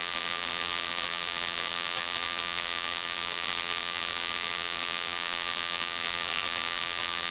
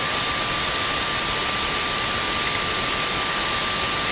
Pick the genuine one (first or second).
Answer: second